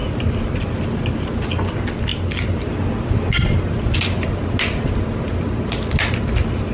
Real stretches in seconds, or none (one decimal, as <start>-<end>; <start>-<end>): 0.0-6.7